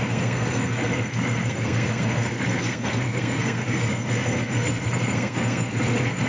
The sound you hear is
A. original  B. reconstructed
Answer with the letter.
B